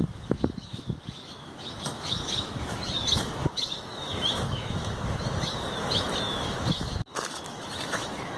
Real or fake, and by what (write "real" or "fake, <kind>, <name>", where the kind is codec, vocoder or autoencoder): fake, autoencoder, DAC-VAE